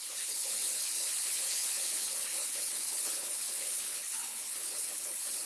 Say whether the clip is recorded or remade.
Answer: remade